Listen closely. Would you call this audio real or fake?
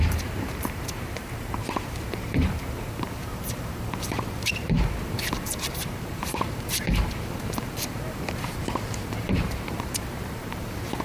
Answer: fake